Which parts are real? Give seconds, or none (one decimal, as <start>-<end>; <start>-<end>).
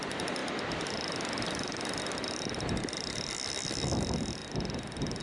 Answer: 0.0-5.2